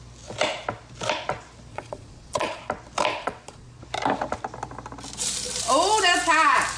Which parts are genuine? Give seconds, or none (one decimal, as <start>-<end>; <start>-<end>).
0.0-1.7; 2.6-3.1; 3.8-6.8